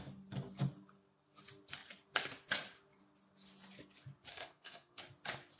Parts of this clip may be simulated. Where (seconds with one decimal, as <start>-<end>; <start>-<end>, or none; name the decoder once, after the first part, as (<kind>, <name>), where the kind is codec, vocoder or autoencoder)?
4.3-5.0 (codec, SNAC)